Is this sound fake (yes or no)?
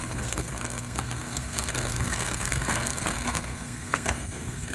yes